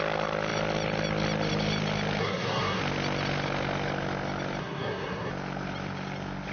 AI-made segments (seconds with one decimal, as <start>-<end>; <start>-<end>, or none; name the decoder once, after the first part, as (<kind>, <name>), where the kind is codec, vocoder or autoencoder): 2.2-2.8 (codec, SNAC); 4.6-5.3